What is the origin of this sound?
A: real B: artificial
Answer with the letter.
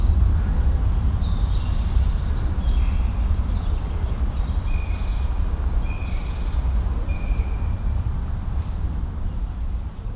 A